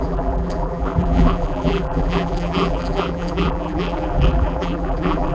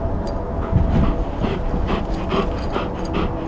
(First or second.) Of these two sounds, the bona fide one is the second